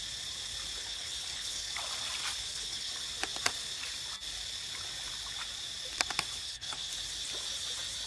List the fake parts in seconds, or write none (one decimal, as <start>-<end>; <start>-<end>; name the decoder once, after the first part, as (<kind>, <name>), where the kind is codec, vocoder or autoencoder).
0.8-1.7 (codec, HILCodec); 2.4-2.9; 6.4-6.9